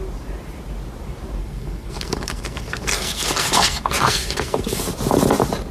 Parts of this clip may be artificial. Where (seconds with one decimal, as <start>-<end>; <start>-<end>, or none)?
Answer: 1.4-4.8